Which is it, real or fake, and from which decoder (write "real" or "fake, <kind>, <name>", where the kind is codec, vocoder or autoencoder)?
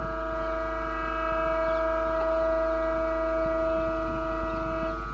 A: real